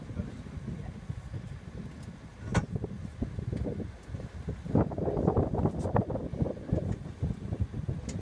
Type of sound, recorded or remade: recorded